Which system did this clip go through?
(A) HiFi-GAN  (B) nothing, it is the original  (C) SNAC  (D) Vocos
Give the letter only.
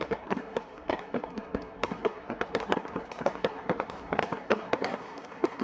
C